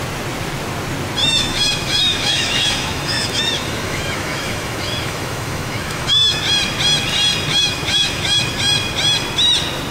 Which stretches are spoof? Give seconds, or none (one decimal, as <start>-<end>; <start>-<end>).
1.2-6.4; 7.5-8.4